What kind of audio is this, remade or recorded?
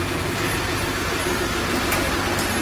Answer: recorded